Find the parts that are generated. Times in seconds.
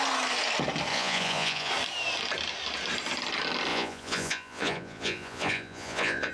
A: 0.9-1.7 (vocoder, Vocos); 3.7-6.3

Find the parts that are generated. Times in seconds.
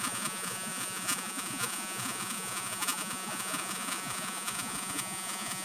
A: 0.0-5.6 (vocoder, Vocos)